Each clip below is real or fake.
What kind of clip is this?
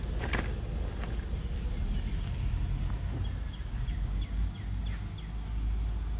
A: real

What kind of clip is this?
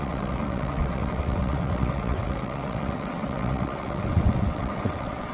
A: fake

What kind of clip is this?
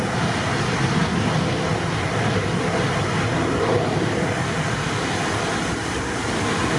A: real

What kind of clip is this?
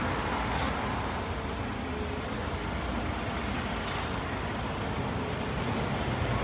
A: real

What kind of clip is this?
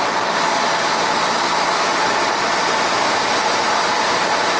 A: real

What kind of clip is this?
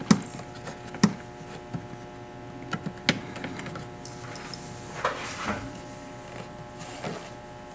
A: real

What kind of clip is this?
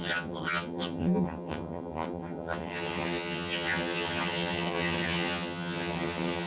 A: fake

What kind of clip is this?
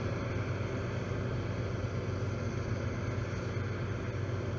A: real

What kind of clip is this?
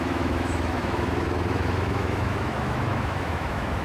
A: fake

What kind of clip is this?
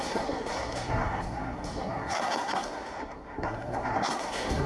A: fake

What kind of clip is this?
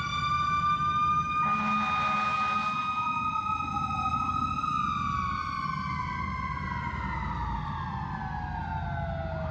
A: real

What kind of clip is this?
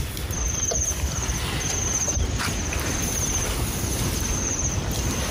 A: real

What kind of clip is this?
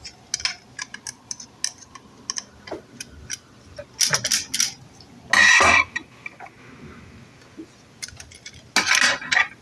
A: real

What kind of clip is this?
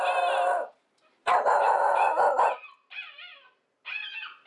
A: real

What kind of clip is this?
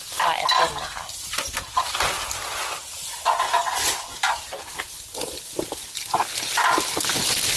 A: real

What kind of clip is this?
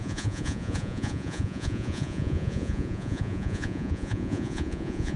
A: fake